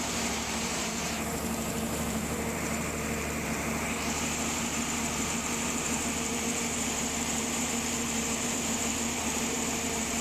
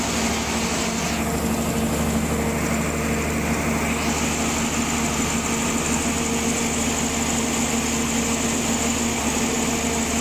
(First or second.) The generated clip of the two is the first